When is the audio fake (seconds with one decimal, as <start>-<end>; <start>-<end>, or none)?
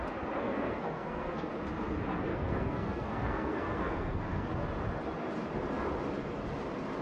0.4-1.5; 2.3-4.5